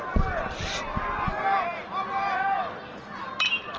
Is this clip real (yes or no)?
yes